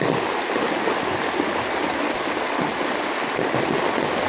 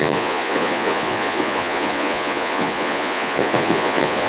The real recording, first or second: first